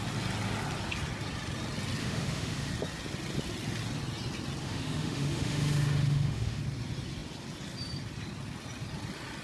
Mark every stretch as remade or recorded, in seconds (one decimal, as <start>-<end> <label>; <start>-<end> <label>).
0.0-2.0 recorded; 2.0-2.7 remade; 2.7-4.6 recorded; 4.6-6.6 remade; 6.6-9.4 recorded